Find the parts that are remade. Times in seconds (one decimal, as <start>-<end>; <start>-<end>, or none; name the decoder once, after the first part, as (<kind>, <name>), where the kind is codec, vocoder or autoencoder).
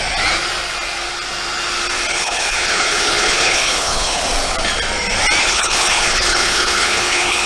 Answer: 2.1-4.2 (codec, HILCodec); 5.4-7.5